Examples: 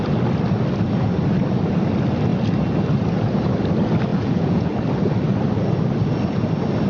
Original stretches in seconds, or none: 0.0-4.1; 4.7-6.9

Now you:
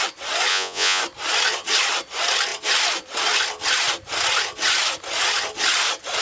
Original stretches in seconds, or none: 0.0-0.5; 1.0-6.2

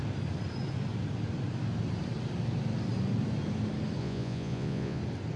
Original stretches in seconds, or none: 0.0-4.0; 5.0-5.4

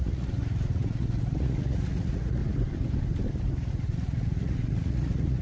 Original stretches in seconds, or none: 2.4-3.7

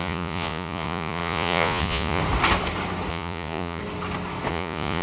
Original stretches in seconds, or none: 2.2-3.1; 3.8-4.5

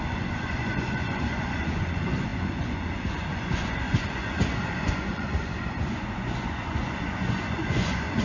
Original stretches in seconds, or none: none

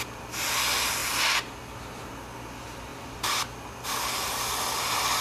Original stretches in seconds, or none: 0.0-5.2